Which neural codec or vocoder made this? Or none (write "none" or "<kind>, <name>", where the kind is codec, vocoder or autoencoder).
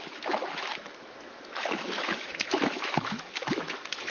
autoencoder, DAC-VAE